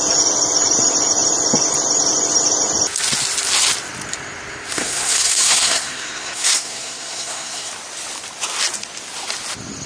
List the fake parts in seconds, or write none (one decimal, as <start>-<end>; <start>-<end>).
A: 4.7-7.7